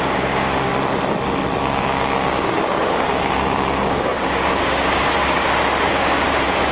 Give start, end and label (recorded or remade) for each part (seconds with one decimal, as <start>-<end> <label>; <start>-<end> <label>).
0.0-0.7 remade; 0.7-1.6 recorded; 1.6-6.7 remade